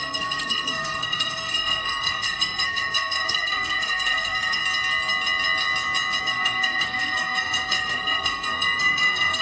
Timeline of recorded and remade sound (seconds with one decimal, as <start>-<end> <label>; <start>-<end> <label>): 0.0-4.6 remade; 4.6-6.2 recorded; 6.2-9.4 remade

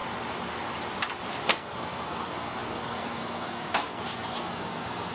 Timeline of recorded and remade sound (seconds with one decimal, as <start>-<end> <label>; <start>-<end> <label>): 0.0-1.4 recorded; 1.4-5.1 remade

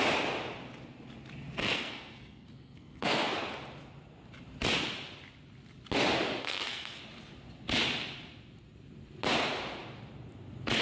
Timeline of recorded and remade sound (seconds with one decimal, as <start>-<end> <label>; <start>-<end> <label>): 0.0-1.6 recorded; 1.6-3.3 remade; 3.3-6.4 recorded; 6.4-7.0 remade; 7.0-10.8 recorded

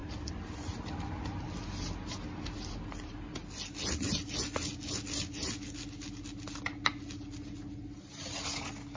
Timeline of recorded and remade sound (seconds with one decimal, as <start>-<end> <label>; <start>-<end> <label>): 0.0-9.0 recorded

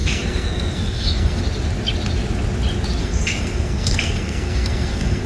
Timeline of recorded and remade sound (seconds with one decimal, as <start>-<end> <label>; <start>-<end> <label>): 0.0-1.4 remade; 1.4-3.0 recorded; 3.0-5.3 remade